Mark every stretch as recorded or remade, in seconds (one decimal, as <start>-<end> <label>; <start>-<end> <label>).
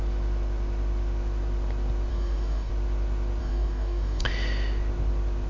0.0-2.1 recorded; 2.1-2.7 remade; 2.7-3.4 recorded; 3.4-4.2 remade; 4.2-5.5 recorded